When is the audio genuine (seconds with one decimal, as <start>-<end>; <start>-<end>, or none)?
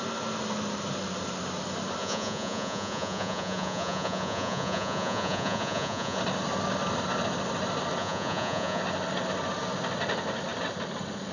0.0-2.0; 6.2-8.0; 8.8-11.3